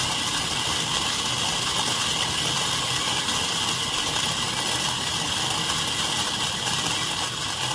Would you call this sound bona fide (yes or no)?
yes